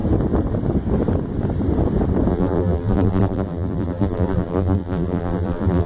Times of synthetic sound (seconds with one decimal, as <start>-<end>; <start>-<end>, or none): 2.3-5.9